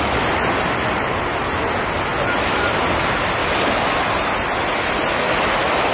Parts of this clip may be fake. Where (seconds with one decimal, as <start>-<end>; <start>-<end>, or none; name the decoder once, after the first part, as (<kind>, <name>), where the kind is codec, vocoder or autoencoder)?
none